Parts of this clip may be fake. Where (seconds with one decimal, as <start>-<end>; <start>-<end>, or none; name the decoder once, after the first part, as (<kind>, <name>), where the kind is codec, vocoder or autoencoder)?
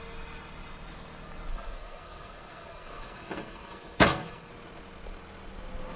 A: 1.5-4.5 (codec, SNAC)